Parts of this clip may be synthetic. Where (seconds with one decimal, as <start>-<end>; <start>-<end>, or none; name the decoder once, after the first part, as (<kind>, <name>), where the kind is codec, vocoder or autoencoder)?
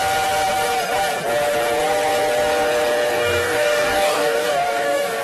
3.1-5.2 (codec, DAC)